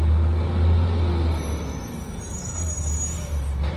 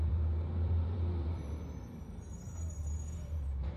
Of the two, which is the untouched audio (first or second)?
first